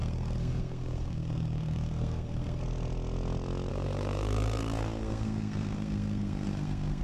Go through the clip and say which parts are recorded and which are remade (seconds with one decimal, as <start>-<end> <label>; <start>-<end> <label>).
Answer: 0.0-2.6 remade; 2.6-3.7 recorded; 3.7-7.0 remade